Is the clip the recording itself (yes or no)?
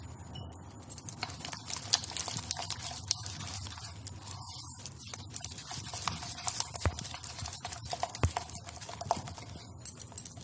yes